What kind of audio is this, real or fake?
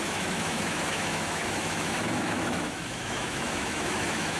fake